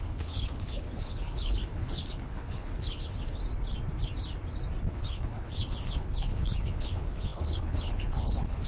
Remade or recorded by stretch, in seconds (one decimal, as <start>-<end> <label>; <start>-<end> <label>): 0.0-3.4 remade; 3.4-4.9 recorded; 4.9-8.7 remade